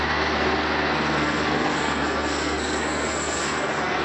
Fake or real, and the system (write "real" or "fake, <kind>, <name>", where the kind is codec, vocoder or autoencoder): fake, codec, SNAC